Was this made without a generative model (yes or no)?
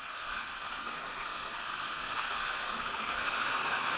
no